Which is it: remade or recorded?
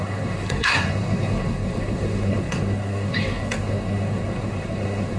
remade